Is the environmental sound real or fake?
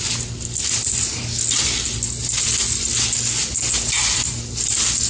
real